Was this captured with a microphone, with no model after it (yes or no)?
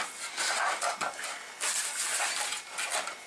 yes